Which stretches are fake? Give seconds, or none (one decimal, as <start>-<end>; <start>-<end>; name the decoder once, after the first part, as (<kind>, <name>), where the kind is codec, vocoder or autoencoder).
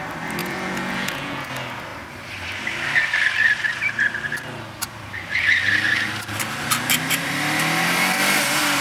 0.4-1.5 (vocoder, Vocos)